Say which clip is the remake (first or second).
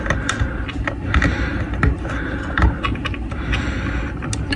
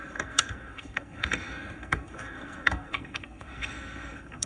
second